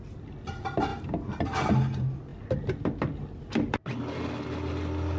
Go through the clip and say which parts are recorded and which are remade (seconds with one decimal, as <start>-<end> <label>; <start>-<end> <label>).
0.0-5.2 recorded